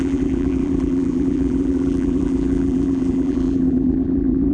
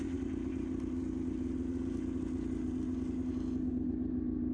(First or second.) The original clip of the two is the second